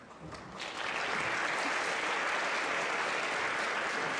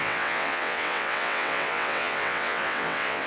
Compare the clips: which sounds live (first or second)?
first